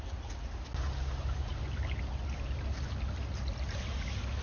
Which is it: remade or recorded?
recorded